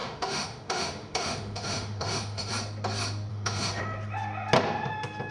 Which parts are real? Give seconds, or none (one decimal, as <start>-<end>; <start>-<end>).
2.5-3.3; 3.8-5.3